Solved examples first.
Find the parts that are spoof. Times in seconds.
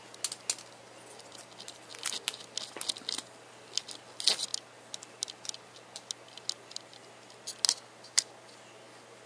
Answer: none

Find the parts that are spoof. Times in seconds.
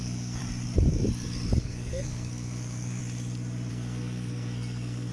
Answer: 0.0-0.4 (codec, SNAC); 1.6-3.0; 3.7-5.1